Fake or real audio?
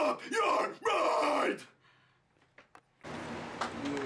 real